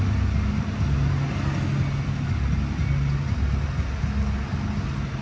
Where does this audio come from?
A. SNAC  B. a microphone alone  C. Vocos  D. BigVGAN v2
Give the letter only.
B